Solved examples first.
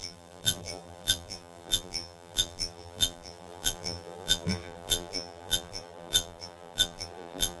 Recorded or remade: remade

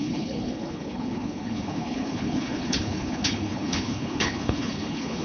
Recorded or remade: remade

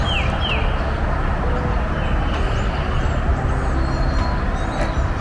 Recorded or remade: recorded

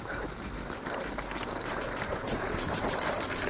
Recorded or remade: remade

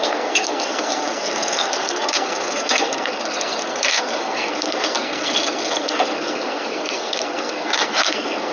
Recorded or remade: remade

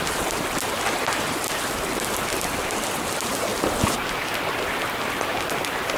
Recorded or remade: recorded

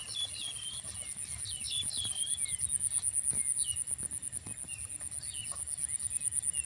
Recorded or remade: recorded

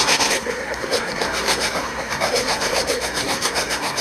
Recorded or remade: remade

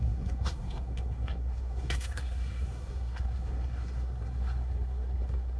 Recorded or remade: remade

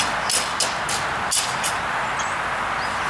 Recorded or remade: recorded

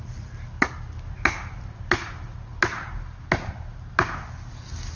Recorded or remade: recorded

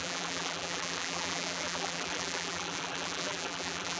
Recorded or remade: remade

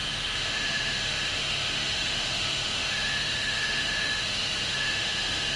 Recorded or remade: remade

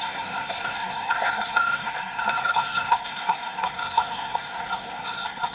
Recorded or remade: remade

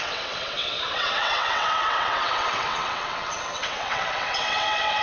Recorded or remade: remade